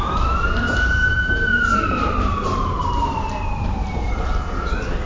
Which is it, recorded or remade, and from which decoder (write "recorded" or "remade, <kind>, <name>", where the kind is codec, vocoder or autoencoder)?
remade, vocoder, BigVGAN v2